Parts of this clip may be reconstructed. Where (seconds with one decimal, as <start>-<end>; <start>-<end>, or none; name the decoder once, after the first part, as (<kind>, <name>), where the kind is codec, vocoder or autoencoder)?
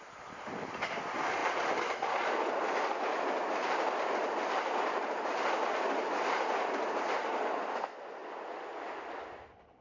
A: none